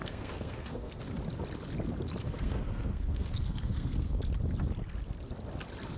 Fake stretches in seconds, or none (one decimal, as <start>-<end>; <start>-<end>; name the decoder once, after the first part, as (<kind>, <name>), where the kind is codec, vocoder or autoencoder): 0.0-0.9 (codec, SNAC); 2.2-4.2